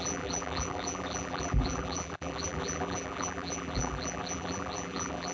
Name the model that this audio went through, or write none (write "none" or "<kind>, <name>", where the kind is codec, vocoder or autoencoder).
vocoder, BigVGAN v2